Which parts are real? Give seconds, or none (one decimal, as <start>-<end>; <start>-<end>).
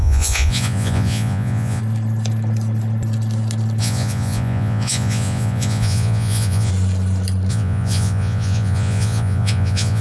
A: 1.8-3.8; 6.7-7.5